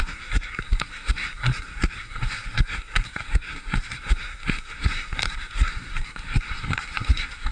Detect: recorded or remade remade